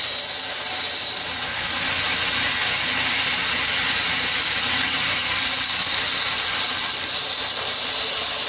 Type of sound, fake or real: real